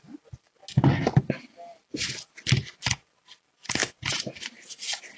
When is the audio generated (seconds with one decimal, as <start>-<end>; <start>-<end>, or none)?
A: none